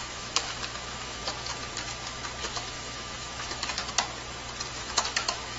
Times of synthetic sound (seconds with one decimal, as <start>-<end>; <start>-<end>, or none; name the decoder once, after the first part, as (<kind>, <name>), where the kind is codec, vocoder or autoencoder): 0.0-1.2 (autoencoder, DAC-VAE); 2.4-3.8; 4.7-5.6